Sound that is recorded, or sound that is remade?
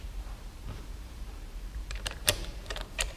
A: remade